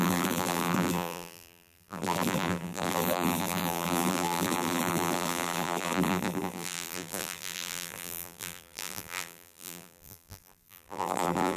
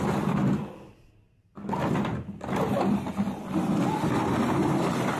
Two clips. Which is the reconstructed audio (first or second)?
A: first